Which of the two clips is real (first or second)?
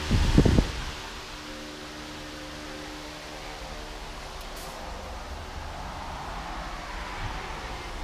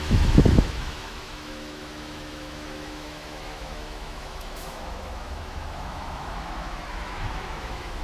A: first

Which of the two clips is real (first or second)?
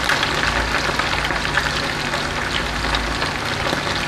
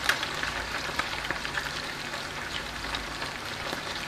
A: first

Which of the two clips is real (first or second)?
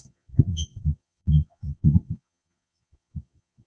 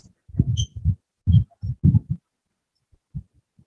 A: second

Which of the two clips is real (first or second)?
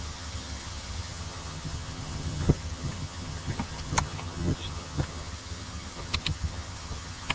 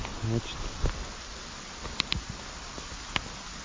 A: second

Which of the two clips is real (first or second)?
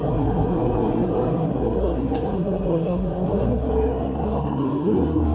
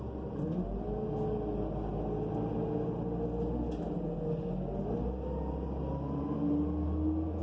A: second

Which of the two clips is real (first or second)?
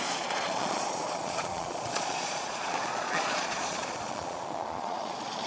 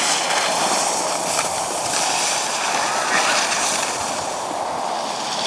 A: second